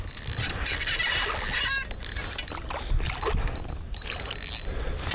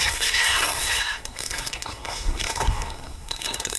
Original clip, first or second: first